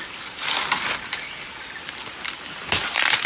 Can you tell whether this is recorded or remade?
remade